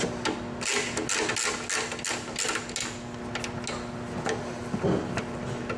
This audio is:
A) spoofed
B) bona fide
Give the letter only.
B